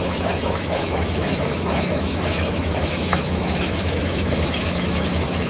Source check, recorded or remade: remade